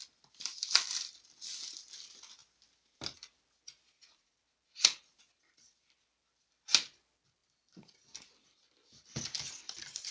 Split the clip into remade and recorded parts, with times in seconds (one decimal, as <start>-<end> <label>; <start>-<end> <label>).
0.0-7.4 recorded; 7.4-10.1 remade